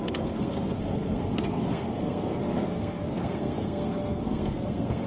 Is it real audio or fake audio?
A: fake